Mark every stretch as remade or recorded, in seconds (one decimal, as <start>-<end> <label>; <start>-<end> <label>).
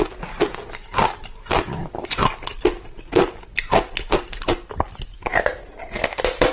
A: 0.0-6.5 recorded